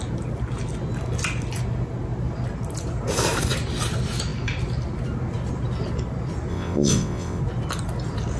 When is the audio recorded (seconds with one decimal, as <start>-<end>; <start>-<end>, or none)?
0.0-6.5; 7.4-8.4